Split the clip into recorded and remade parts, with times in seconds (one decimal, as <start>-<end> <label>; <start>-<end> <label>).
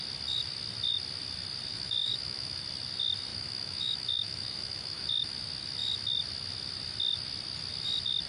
0.0-1.7 recorded; 1.7-2.6 remade; 2.6-3.3 recorded; 3.3-5.3 remade; 5.3-8.3 recorded